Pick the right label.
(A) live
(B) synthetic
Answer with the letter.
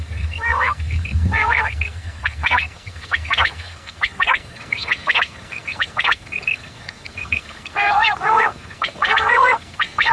B